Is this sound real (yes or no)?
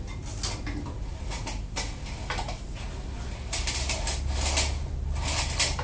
yes